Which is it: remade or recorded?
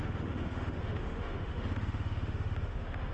remade